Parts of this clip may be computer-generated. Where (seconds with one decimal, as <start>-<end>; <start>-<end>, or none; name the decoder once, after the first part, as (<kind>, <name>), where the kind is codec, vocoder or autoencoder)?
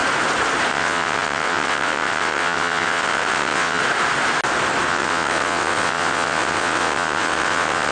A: 0.7-3.8 (vocoder, WaveNeXt); 4.9-7.9